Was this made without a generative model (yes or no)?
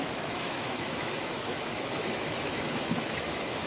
no